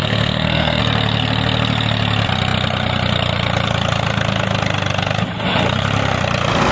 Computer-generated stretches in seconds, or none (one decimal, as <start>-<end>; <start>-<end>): 0.0-0.8